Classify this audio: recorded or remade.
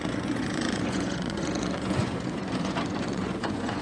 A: remade